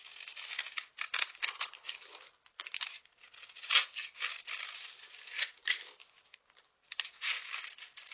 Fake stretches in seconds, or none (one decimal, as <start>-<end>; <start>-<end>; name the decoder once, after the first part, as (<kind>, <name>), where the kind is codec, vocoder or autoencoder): 1.4-2.0 (codec, HILCodec)